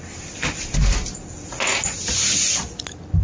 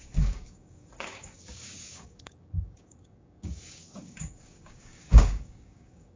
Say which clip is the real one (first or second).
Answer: first